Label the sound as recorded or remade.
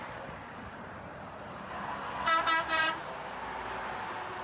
recorded